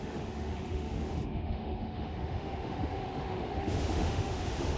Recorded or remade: remade